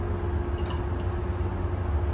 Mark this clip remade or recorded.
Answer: recorded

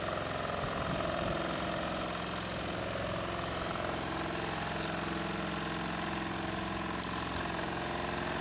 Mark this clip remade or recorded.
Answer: recorded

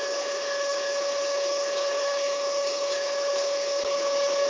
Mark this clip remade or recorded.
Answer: remade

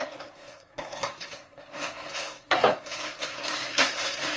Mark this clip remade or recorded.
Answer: remade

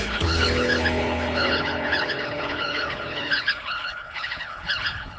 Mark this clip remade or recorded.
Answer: remade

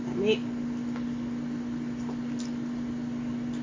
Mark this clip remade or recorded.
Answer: recorded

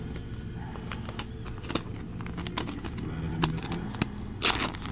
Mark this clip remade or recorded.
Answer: recorded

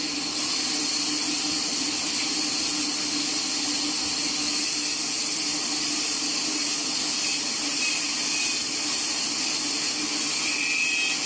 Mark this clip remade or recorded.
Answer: recorded